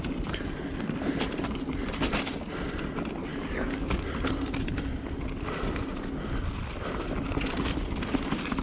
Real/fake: real